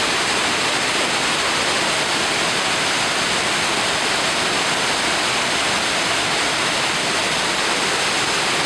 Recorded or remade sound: recorded